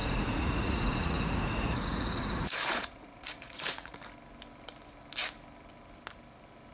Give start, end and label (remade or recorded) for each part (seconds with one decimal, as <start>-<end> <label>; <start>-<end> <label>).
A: 0.0-4.0 remade; 4.0-6.7 recorded